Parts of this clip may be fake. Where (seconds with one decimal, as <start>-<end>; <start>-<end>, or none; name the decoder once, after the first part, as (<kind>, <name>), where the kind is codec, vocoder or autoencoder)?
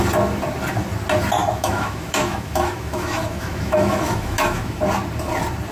1.4-4.8 (autoencoder, DAC-VAE)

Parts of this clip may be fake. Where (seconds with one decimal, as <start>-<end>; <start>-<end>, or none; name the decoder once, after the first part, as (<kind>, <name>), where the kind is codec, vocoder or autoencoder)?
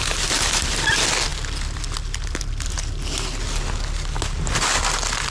none